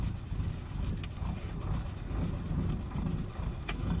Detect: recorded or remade recorded